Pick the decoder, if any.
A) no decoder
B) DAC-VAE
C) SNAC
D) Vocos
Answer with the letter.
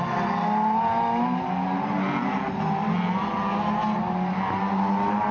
A